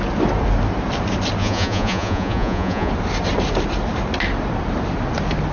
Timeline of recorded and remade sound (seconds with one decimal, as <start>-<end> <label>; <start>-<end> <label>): 0.0-1.4 recorded; 1.4-2.9 remade; 2.9-5.5 recorded